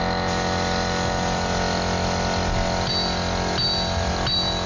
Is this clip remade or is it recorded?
recorded